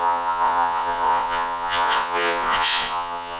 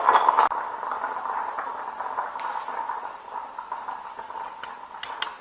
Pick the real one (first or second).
second